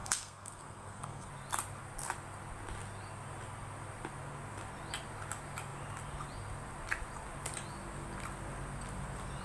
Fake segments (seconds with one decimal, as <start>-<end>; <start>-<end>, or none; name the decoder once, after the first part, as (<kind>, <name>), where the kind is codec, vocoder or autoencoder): 0.0-1.3 (codec, SNAC)